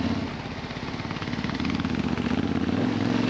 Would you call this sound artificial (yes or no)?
no